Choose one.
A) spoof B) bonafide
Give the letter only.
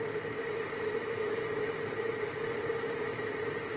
B